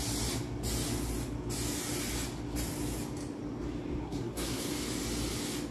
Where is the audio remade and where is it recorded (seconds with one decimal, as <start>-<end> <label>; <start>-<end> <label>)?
0.0-4.0 recorded; 4.0-4.7 remade; 4.7-5.7 recorded